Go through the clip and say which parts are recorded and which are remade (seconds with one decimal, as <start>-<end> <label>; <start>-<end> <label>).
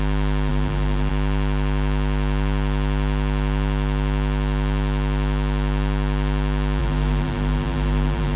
0.0-0.5 recorded; 0.5-1.1 remade; 1.1-6.8 recorded; 6.8-8.4 remade